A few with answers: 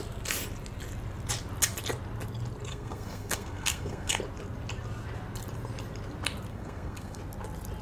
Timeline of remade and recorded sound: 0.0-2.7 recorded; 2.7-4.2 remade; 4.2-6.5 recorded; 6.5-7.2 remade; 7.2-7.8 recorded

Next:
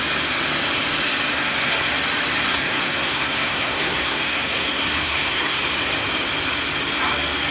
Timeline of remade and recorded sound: 0.0-1.3 recorded; 1.3-1.9 remade; 1.9-2.5 recorded; 2.5-5.6 remade; 5.6-7.5 recorded

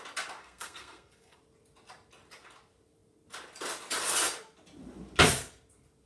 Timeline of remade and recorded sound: 0.0-0.4 recorded; 0.4-1.4 remade; 1.4-6.1 recorded

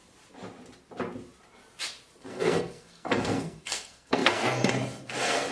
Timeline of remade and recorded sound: 0.0-2.2 recorded; 2.2-5.5 remade

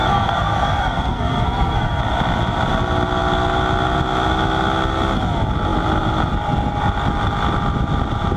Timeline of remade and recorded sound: 0.0-2.0 remade; 2.0-8.4 recorded

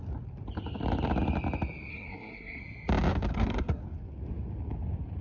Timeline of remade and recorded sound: 0.0-1.9 recorded; 1.9-2.6 remade; 2.6-3.3 recorded; 3.3-3.8 remade; 3.8-5.2 recorded

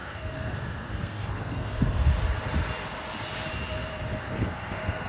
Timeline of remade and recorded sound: 0.0-2.1 remade; 2.1-4.3 recorded; 4.3-5.1 remade

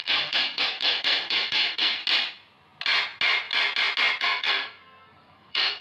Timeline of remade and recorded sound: 0.0-2.0 remade; 2.0-4.2 recorded; 4.2-5.8 remade